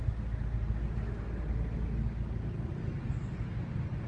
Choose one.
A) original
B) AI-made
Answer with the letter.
A